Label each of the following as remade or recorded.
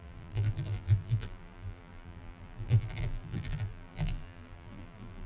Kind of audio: remade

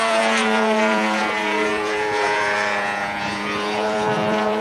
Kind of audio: remade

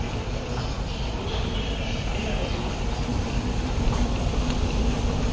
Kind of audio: remade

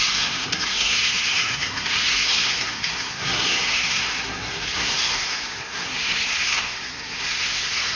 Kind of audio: remade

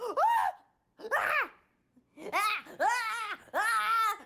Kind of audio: recorded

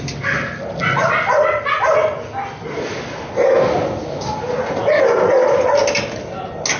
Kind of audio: recorded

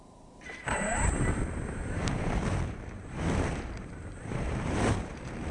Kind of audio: remade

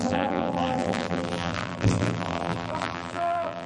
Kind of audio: remade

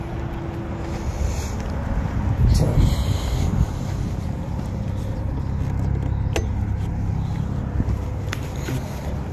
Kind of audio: recorded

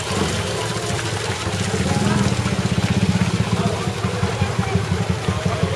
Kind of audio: recorded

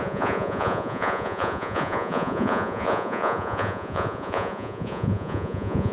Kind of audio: remade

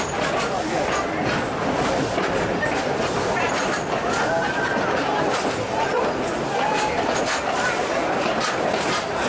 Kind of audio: recorded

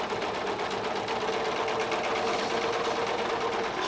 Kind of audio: recorded